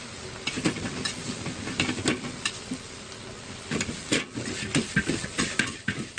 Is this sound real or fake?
real